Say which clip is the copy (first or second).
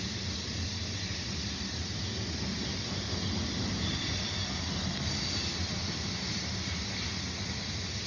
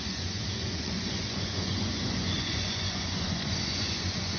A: second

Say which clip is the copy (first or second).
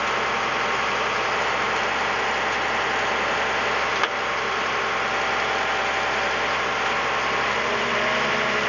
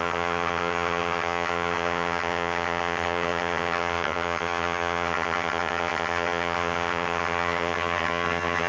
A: second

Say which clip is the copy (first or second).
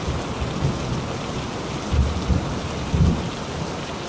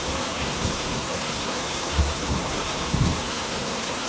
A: second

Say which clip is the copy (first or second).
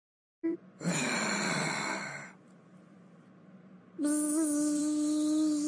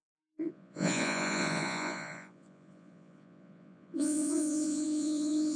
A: second